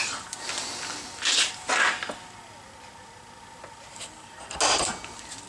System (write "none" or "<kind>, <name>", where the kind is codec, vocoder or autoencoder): none